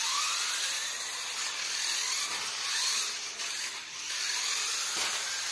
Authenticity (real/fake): real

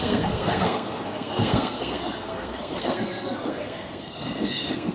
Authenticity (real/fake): fake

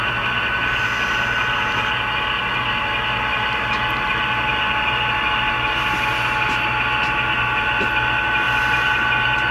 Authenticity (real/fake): real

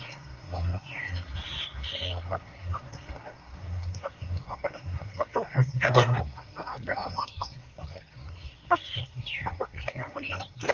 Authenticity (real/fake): fake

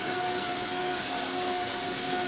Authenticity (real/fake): fake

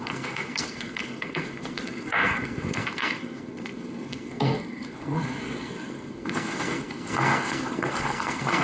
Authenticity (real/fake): fake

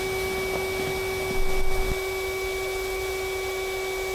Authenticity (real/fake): real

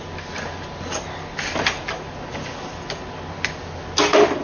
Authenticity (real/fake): real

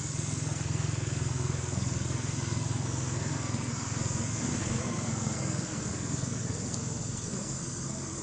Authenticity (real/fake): fake